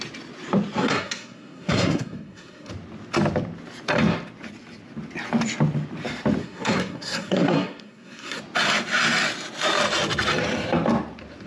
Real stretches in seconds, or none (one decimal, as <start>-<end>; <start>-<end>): 0.0-0.8; 2.7-6.4; 8.4-11.5